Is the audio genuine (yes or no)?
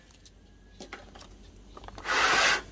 yes